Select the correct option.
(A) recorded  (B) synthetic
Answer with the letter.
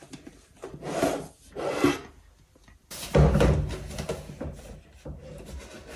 A